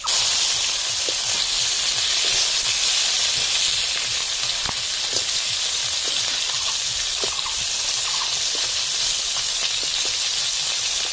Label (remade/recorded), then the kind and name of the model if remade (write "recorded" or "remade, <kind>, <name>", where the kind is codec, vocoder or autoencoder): recorded